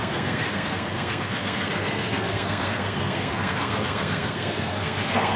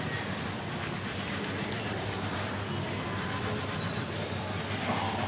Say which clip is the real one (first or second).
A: second